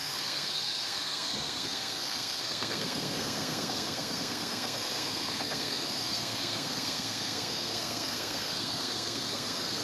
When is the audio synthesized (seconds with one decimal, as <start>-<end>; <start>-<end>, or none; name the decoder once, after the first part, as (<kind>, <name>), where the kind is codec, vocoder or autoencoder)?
0.0-9.8 (codec, SNAC)